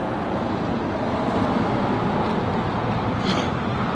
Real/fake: real